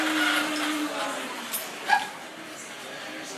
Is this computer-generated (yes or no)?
no